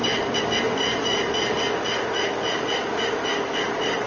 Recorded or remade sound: recorded